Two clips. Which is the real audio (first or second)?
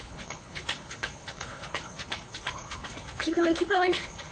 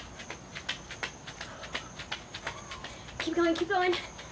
second